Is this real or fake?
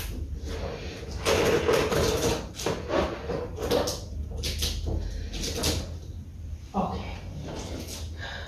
real